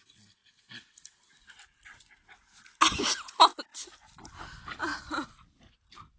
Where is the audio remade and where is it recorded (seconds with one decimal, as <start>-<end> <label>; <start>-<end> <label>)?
0.0-6.2 recorded